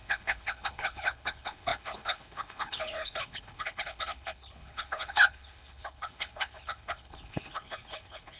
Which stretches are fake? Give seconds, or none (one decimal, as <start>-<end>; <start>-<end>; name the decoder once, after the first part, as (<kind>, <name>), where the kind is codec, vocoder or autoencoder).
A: 0.0-8.4 (codec, HILCodec)